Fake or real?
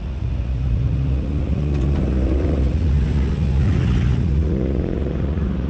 fake